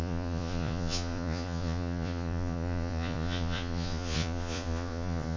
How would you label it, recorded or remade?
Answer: remade